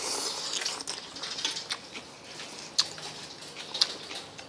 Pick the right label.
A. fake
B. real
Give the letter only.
B